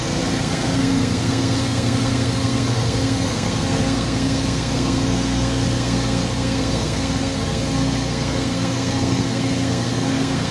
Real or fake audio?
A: fake